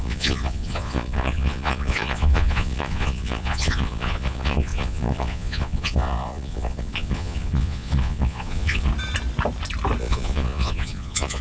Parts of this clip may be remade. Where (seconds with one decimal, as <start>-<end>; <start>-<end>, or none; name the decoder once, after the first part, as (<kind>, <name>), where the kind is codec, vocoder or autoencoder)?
0.0-8.9 (vocoder, Vocos); 10.0-11.4

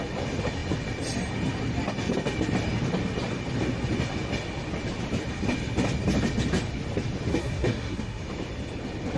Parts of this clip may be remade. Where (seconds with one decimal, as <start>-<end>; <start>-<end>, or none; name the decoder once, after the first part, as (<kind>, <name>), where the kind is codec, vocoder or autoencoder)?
7.3-8.2 (codec, SNAC)

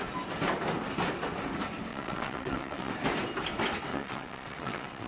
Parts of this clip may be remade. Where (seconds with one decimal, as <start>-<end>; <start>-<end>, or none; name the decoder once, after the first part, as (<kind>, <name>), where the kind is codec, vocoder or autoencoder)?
1.9-2.9 (vocoder, WaveNeXt); 3.9-5.1